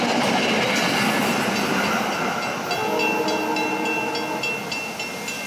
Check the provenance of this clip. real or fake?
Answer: real